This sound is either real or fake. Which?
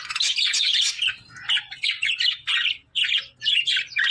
real